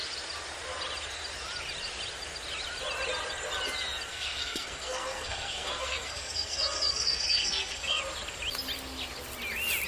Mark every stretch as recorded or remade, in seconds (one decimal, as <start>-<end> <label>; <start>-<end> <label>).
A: 0.0-4.1 recorded; 4.1-8.0 remade; 8.0-9.9 recorded